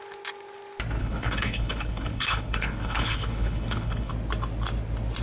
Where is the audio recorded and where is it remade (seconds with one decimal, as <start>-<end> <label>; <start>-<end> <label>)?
0.0-1.0 recorded; 1.0-4.1 remade; 4.1-5.2 recorded